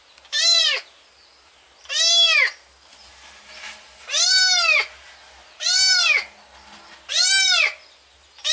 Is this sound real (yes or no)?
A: yes